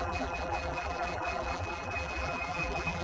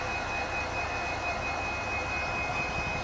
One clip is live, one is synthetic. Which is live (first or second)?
second